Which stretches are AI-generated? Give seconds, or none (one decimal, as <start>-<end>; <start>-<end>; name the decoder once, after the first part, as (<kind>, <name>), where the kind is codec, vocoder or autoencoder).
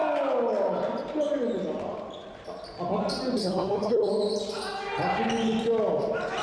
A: 3.4-4.1 (codec, SNAC)